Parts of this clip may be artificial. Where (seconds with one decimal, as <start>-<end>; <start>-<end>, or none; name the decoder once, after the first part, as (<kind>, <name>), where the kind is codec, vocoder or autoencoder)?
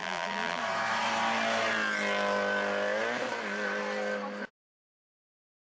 0.0-0.6 (vocoder, BigVGAN v2)